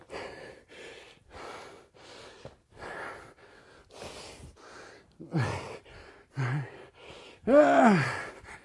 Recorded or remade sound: recorded